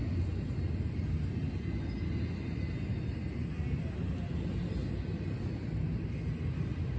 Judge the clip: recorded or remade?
recorded